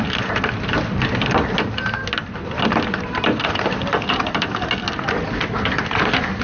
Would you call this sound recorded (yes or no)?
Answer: yes